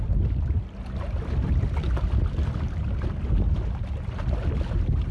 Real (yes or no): yes